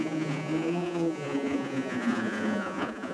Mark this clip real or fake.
fake